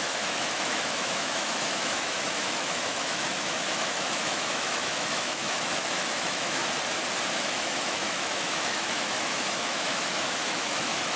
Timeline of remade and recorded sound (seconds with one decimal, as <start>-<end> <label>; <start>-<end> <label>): 0.0-6.6 remade; 6.6-7.3 recorded; 7.3-11.2 remade